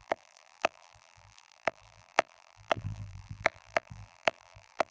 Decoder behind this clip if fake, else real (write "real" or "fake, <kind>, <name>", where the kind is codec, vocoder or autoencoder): fake, vocoder, BigVGAN v2